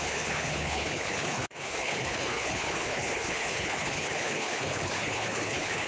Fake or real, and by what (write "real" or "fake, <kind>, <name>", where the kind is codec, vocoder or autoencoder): fake, codec, HILCodec